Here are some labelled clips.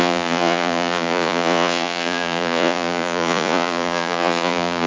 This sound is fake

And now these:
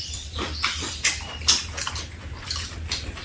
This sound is fake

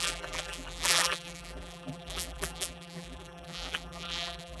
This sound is fake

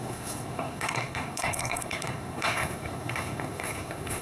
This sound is fake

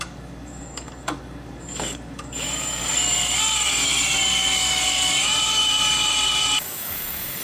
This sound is fake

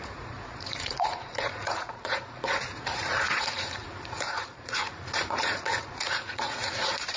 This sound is fake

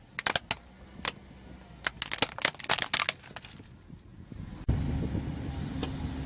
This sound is real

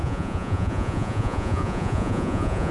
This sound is fake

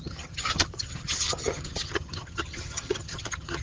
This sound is fake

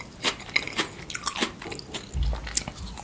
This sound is real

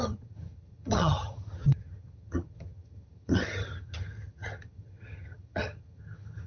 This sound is fake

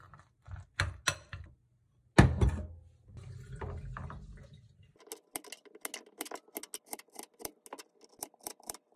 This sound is real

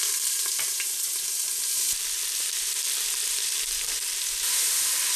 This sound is real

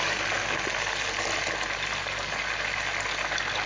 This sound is real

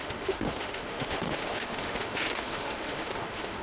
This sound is fake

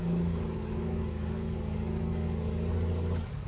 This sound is fake